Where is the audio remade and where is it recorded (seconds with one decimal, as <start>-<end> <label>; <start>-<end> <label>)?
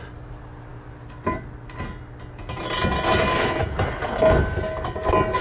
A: 0.0-5.4 recorded